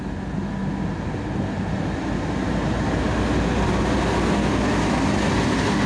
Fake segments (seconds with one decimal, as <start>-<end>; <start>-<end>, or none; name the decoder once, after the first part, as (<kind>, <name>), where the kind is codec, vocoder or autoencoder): none

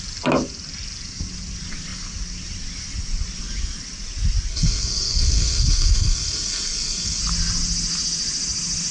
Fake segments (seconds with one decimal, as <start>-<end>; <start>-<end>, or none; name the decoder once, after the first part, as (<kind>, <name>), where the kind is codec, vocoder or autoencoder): 4.5-7.2 (codec, SNAC)

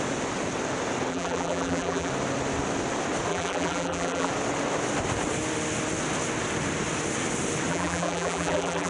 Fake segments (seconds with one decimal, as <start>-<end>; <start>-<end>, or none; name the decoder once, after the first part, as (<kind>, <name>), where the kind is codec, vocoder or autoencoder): 1.1-2.1 (vocoder, BigVGAN v2); 3.3-4.3; 7.7-8.9